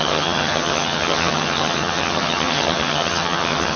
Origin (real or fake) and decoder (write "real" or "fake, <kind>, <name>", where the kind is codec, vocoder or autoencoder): fake, vocoder, HiFi-GAN